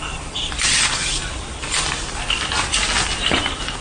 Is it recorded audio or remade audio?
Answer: recorded